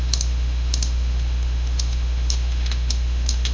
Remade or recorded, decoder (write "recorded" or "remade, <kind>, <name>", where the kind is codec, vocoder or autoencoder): remade, autoencoder, DAC-VAE